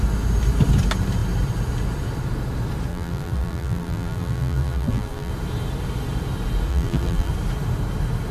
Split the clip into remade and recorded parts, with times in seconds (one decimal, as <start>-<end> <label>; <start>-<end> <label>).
0.0-2.9 recorded; 2.9-5.3 remade; 5.3-6.7 recorded; 6.7-7.3 remade; 7.3-8.3 recorded